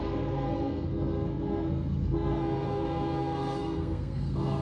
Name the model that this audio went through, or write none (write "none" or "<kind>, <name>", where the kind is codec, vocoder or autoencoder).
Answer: codec, SNAC